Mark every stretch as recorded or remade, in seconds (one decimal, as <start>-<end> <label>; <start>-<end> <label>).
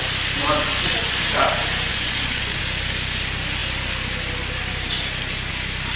0.0-0.4 recorded; 0.4-1.2 remade; 1.2-1.9 recorded; 1.9-2.6 remade; 2.6-6.0 recorded